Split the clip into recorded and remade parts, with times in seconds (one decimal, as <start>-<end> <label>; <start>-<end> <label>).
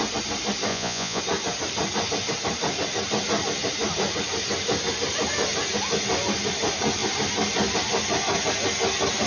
0.0-0.7 recorded; 0.7-1.2 remade; 1.2-9.3 recorded